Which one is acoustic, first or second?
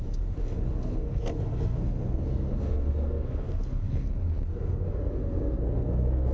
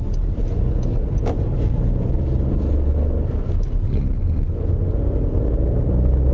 second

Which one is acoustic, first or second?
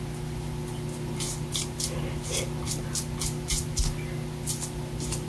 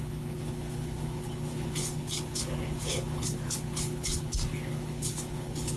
first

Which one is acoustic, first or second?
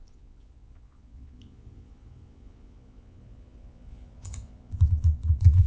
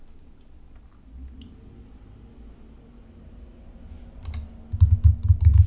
second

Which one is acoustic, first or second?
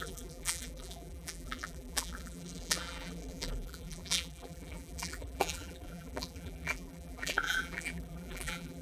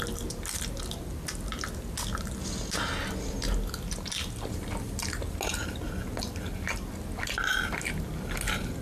second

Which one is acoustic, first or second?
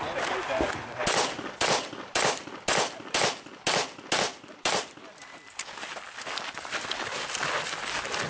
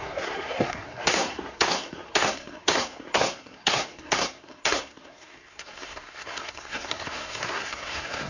first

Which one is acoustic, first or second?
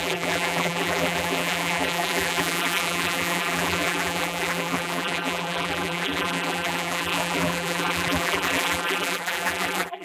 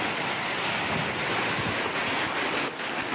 second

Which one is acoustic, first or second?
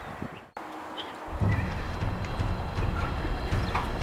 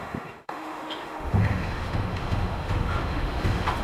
first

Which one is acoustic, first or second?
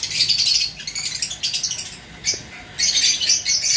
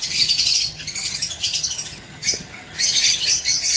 first